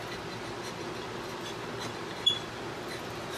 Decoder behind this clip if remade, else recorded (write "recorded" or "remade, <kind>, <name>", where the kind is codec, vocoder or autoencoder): recorded